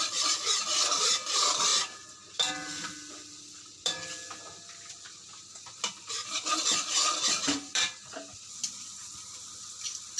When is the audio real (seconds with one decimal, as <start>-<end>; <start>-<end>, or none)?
9.0-9.7